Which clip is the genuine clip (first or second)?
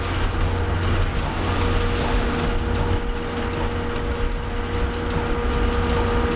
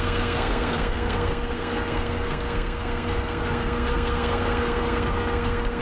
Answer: first